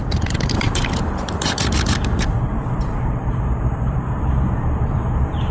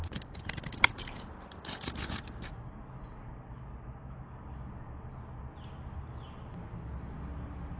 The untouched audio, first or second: second